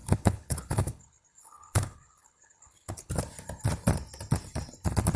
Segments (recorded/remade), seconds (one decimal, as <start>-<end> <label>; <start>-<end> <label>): 0.0-3.1 remade; 3.1-5.2 recorded